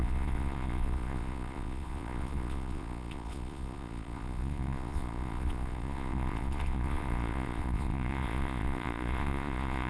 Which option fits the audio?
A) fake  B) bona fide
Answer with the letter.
A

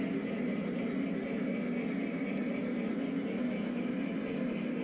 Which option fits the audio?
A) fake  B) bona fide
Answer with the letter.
B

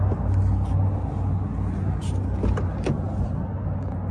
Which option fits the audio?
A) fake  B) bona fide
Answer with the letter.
B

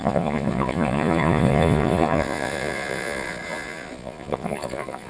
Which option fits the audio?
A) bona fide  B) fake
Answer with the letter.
B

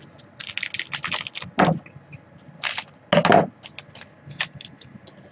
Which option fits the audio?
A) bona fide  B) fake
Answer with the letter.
A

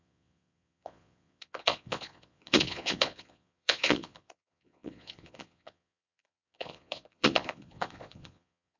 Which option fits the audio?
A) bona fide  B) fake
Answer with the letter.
B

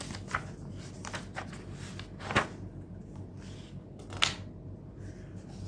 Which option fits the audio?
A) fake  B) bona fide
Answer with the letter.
B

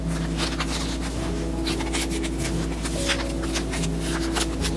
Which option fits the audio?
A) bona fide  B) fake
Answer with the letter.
A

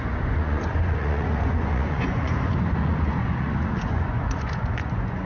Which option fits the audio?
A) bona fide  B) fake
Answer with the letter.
B